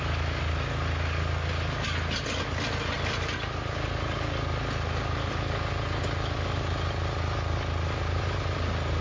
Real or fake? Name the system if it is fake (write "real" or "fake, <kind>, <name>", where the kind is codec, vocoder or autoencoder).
real